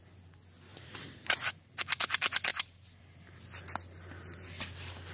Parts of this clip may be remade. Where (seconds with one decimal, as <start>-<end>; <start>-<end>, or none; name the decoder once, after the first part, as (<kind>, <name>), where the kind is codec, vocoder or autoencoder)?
0.7-1.8 (vocoder, BigVGAN v2); 2.5-3.0